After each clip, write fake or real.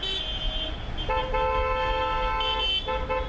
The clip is real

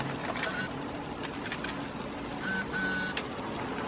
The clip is real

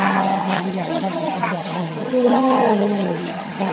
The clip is fake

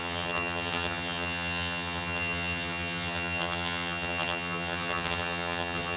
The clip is fake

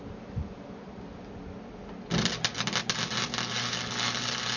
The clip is real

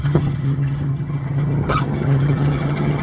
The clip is fake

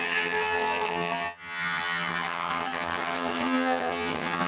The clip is fake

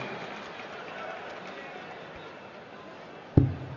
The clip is real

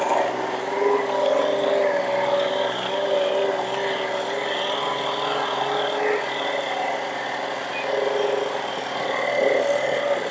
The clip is real